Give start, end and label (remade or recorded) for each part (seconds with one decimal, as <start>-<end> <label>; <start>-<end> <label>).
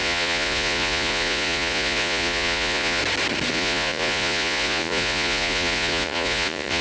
0.0-3.0 remade; 3.0-3.5 recorded; 3.5-6.8 remade